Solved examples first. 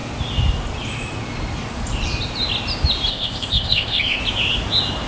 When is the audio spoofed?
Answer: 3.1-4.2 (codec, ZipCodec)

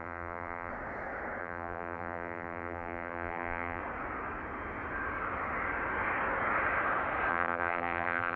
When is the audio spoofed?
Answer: 0.0-0.7 (vocoder, BigVGAN v2); 1.4-3.8; 7.3-8.4

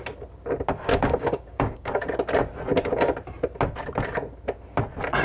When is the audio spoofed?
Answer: 0.9-1.9 (codec, DAC)

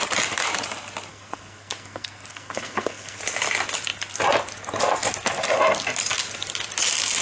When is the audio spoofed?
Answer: 1.1-3.2 (codec, SNAC)

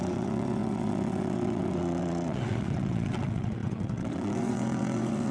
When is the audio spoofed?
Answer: 0.0-5.3 (vocoder, WaveNeXt)

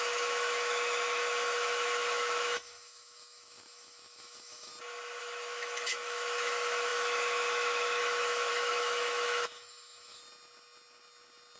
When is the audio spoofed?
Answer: 0.0-4.7 (autoencoder, DAC-VAE); 5.2-10.2

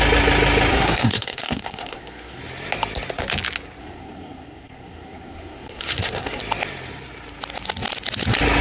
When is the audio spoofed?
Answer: 0.7-2.4 (codec, SNAC); 3.8-6.4